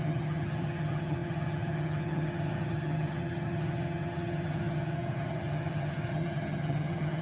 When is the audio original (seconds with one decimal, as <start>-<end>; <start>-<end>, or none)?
none